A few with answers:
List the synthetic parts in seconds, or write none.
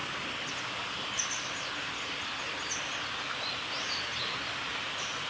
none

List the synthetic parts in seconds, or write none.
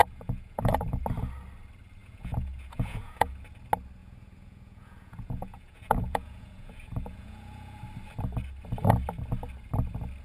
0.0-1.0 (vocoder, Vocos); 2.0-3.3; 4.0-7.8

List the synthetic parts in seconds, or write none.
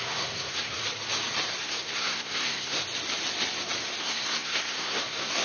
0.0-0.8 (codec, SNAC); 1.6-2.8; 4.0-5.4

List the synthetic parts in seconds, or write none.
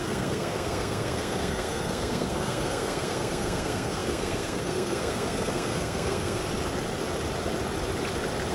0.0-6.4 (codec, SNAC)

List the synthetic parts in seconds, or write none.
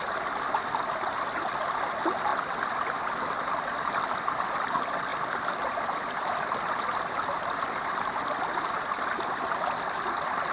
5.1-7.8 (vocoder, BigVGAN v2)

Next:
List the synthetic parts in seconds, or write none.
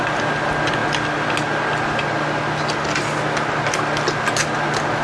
none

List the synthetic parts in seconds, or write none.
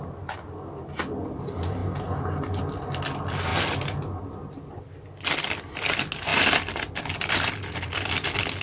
none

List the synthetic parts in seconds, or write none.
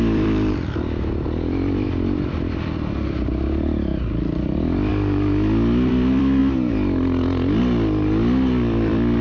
0.0-6.4 (vocoder, BigVGAN v2); 7.6-9.2